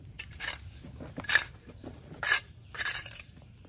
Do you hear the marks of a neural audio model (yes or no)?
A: yes